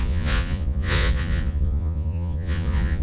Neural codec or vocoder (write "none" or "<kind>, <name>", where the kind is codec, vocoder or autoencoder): vocoder, Vocos